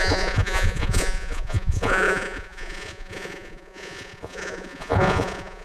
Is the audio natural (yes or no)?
no